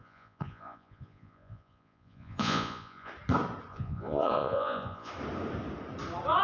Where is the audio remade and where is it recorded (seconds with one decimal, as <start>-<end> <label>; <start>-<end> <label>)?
0.0-3.1 remade; 3.1-3.7 recorded; 3.7-5.1 remade; 5.1-6.4 recorded